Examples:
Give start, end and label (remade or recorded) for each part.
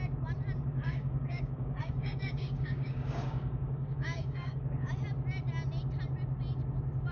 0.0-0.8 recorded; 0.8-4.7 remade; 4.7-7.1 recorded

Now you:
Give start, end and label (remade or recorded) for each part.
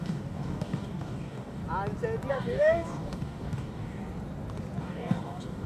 0.0-1.6 remade; 1.6-2.3 recorded; 2.3-4.0 remade; 4.0-4.8 recorded; 4.8-5.7 remade